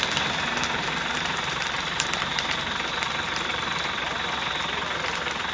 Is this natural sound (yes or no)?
no